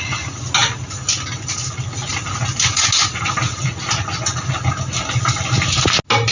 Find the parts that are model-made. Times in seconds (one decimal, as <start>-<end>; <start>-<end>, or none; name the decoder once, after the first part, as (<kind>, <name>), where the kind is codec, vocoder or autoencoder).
none